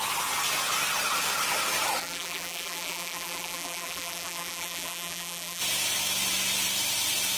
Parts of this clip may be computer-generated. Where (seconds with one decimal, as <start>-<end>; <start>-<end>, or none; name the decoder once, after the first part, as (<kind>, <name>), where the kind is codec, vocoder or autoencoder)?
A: 2.0-5.6 (vocoder, BigVGAN v2)